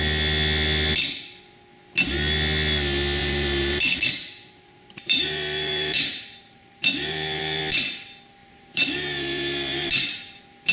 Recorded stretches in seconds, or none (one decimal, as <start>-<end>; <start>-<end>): 0.0-3.2; 7.6-8.4

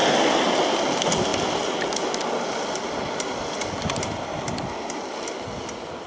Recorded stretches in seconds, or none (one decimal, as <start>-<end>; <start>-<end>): 0.5-1.3; 5.0-6.1

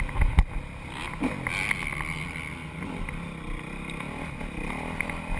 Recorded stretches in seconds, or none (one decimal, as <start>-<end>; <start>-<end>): 0.0-5.4

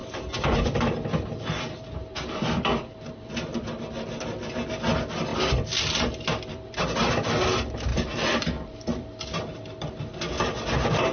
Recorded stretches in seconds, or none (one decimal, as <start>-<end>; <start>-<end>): 3.8-5.3; 6.9-7.9; 10.0-11.1

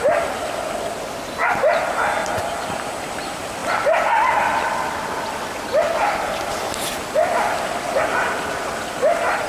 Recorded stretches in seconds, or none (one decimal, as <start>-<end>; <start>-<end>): 0.0-2.2; 3.1-9.5

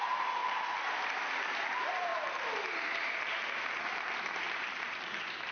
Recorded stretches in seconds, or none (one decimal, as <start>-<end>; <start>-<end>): 0.4-1.5; 2.1-3.8